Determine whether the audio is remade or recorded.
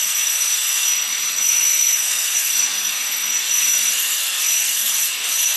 remade